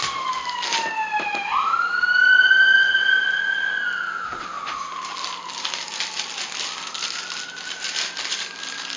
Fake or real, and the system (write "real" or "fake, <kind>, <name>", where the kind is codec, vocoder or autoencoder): real